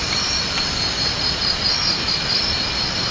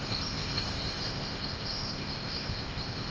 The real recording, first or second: first